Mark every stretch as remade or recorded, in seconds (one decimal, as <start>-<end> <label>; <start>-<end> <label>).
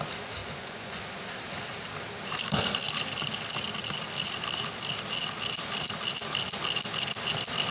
0.0-0.4 recorded; 0.4-1.0 remade; 1.0-7.7 recorded